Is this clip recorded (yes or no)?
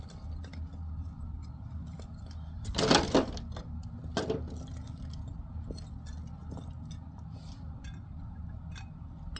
yes